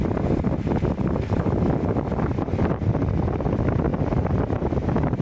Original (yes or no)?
yes